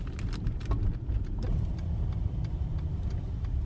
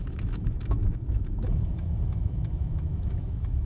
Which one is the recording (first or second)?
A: first